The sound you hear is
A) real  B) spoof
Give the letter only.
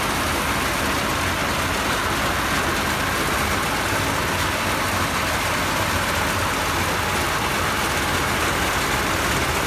A